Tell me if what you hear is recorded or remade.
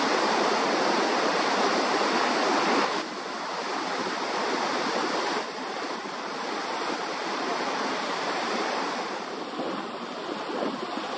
recorded